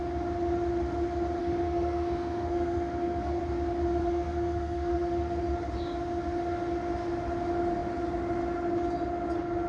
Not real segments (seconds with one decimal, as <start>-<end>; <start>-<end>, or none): 1.4-3.4; 4.0-5.4